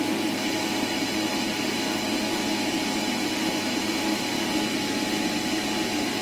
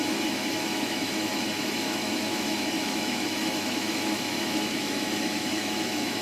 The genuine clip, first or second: first